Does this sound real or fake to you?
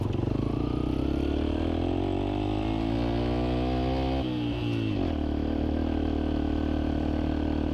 real